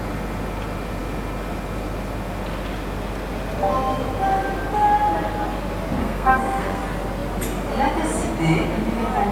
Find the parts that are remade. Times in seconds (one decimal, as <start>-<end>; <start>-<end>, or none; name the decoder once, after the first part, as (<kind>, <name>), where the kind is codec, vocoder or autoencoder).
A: 6.0-6.8 (codec, SNAC)